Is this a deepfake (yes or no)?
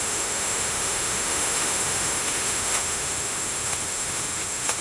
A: yes